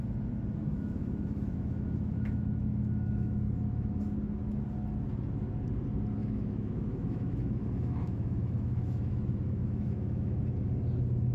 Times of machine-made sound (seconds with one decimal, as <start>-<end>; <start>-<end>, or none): 0.6-4.0; 6.2-10.4

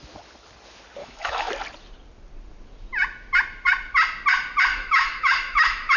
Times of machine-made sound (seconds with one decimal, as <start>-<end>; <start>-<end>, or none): 1.0-1.5; 4.7-6.0

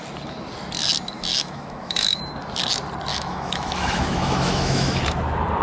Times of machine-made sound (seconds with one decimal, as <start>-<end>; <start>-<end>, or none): 1.3-2.2; 3.1-5.0

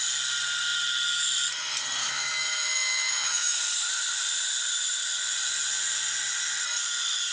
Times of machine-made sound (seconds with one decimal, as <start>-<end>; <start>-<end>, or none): 2.0-3.6

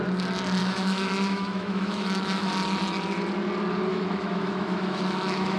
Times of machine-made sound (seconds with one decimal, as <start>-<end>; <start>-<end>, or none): 0.6-2.5; 3.9-5.6

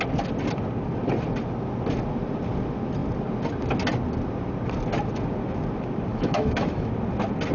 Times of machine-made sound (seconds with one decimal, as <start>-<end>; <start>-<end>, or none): 6.1-6.9

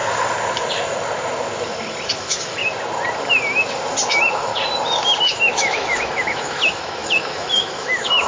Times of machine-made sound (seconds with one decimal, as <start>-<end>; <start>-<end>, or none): 2.1-2.6; 4.1-4.5; 5.2-8.3

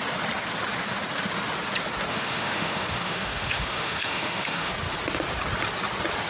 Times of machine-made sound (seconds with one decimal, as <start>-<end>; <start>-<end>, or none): 2.1-4.7